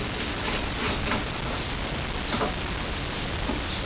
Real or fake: real